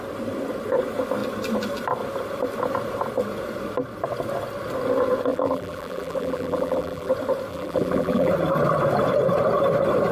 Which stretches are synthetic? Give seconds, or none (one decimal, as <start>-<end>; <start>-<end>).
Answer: 5.3-7.1; 7.5-8.3